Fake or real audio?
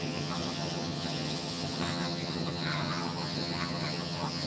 fake